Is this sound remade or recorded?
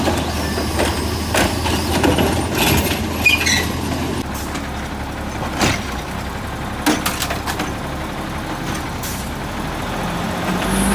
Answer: recorded